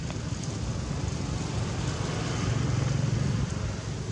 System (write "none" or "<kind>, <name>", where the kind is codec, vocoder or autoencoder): none